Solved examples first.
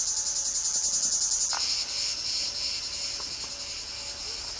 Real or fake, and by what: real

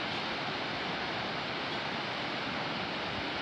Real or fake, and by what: real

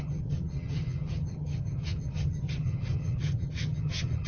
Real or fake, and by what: fake, vocoder, HiFi-GAN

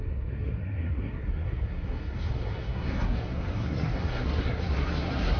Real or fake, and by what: fake, codec, SNAC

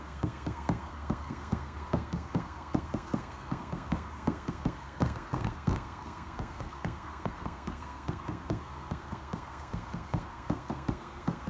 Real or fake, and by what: fake, codec, SNAC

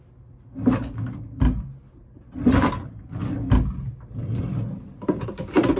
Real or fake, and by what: real